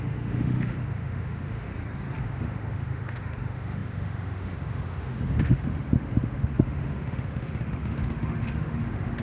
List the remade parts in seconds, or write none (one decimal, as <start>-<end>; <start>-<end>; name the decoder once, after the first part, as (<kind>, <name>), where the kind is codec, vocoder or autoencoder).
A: 0.0-1.7 (autoencoder, DAC-VAE); 2.2-9.2